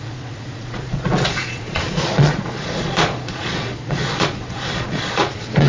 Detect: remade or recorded remade